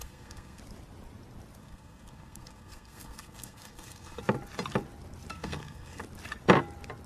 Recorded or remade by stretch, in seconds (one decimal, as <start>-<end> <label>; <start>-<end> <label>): 0.0-0.6 remade; 0.6-1.6 recorded; 1.6-4.2 remade; 4.2-5.3 recorded; 5.3-6.0 remade; 6.0-7.1 recorded